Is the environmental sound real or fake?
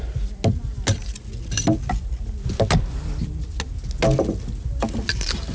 real